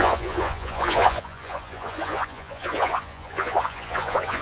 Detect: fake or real fake